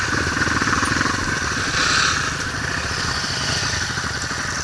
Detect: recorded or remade recorded